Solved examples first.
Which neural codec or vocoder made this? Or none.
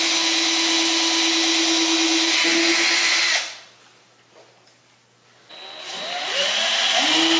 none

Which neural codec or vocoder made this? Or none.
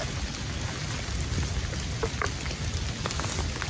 none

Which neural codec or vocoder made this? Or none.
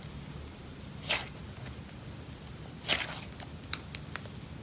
none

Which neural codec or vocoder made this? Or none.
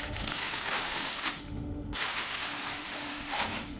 autoencoder, DAC-VAE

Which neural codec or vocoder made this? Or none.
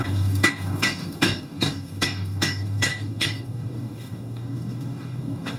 codec, DAC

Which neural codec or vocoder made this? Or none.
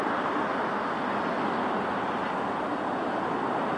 none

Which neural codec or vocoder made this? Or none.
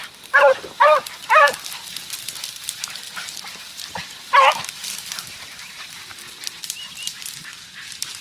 none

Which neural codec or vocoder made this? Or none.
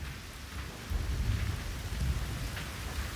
none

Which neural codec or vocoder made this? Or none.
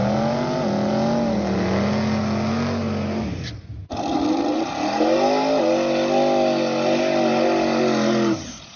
none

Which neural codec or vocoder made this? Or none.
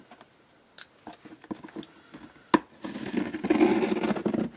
none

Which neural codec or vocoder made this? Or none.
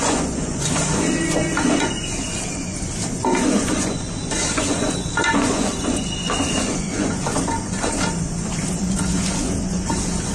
vocoder, Vocos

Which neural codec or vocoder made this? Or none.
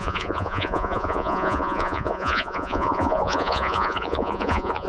vocoder, Vocos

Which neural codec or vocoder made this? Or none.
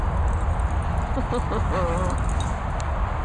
none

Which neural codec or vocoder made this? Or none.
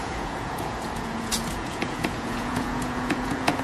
vocoder, Vocos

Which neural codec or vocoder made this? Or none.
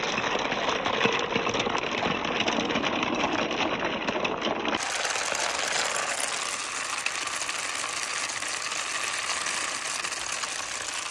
none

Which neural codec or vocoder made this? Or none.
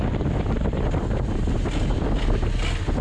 none